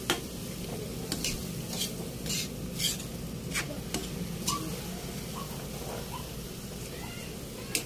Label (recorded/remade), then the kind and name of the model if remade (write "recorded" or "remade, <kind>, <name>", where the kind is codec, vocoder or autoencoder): recorded